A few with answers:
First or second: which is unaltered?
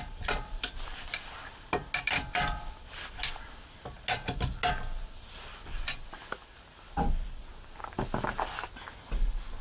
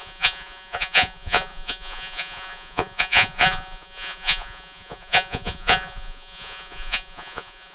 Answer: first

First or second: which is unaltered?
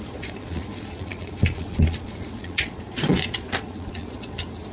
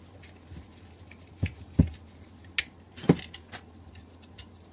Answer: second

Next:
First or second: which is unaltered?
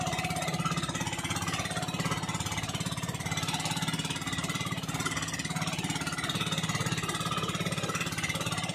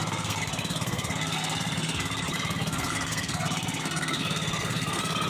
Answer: first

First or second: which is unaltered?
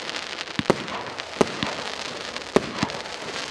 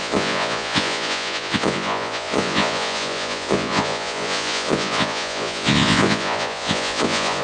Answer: first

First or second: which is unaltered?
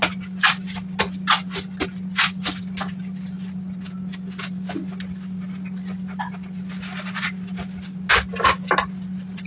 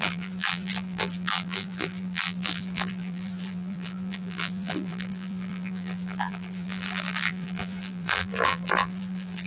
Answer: first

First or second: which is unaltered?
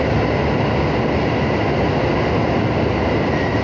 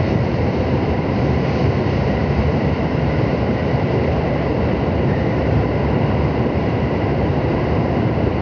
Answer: first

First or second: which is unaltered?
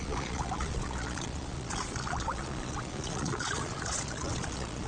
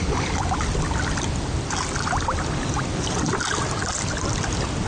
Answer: second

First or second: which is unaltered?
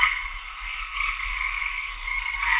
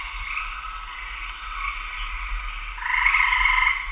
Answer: second